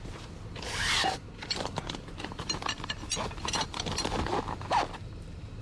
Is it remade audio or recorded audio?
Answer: recorded